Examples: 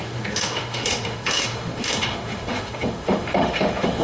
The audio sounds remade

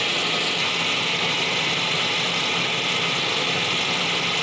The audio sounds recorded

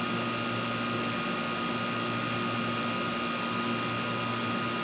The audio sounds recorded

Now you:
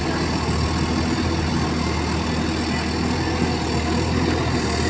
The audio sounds recorded